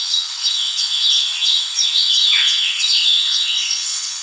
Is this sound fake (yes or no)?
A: yes